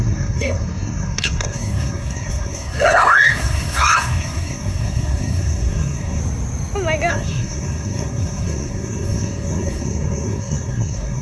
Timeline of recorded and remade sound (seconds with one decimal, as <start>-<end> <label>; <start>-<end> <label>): 0.0-6.2 remade; 6.2-7.1 recorded; 7.1-11.2 remade